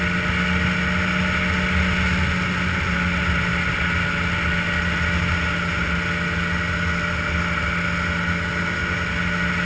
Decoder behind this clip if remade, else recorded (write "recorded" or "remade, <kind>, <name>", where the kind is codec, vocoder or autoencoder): recorded